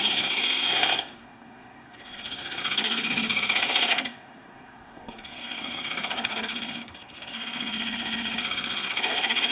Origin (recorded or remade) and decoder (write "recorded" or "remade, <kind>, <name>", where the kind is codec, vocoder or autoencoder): remade, codec, SNAC